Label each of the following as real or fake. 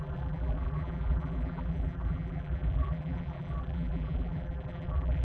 fake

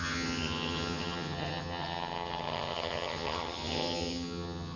fake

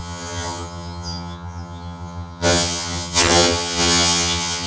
fake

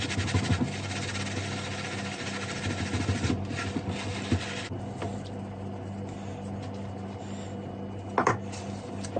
real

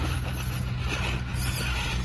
real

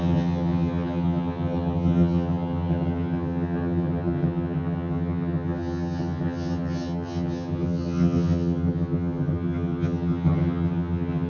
fake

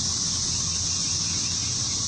real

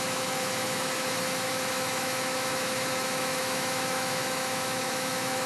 fake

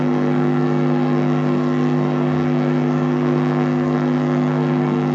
fake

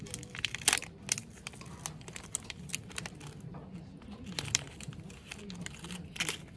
real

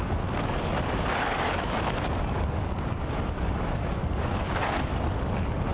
fake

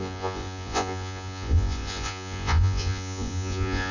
fake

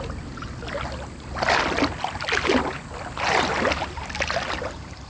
real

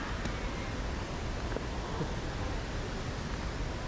real